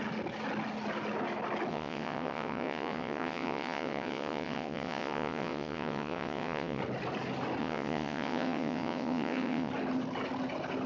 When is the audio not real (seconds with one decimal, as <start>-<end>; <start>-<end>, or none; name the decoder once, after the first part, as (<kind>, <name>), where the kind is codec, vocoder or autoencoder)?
1.7-6.8 (vocoder, WaveNeXt); 7.6-9.7